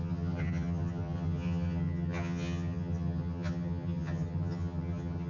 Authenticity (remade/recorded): remade